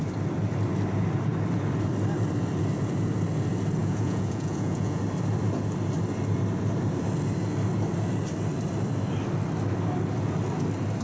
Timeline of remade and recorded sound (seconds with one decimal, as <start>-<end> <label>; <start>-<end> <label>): 0.0-3.8 recorded; 3.8-5.0 remade; 5.0-11.0 recorded

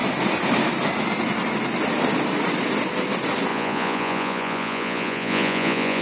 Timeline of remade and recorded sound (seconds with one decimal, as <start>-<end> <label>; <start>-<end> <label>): 0.0-3.5 recorded; 3.5-6.0 remade

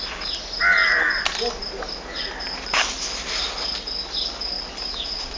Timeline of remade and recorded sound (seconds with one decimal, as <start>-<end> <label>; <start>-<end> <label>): 0.0-5.4 recorded

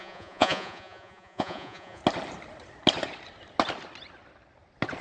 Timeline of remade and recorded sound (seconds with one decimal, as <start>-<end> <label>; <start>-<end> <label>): 0.0-2.0 remade; 2.0-5.0 recorded

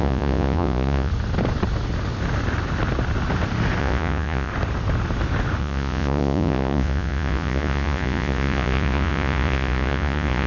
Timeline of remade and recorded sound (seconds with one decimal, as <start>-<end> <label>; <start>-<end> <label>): 0.0-1.1 remade; 1.1-3.8 recorded; 3.8-4.5 remade; 4.5-5.6 recorded; 5.6-10.5 remade

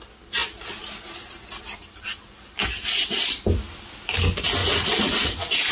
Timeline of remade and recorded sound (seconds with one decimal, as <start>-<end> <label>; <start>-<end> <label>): 0.0-4.6 recorded; 4.6-5.3 remade; 5.3-5.7 recorded